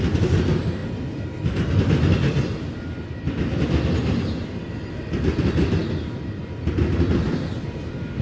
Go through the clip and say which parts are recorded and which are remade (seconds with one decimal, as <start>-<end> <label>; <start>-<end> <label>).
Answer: 0.0-8.2 recorded